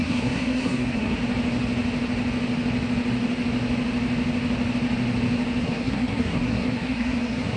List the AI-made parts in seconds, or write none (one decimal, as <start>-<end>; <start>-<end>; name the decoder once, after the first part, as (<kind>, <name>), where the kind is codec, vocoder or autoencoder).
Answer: 0.0-1.2 (codec, SNAC); 5.6-7.6